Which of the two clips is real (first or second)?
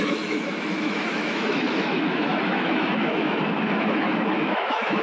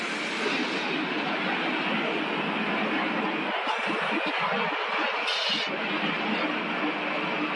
second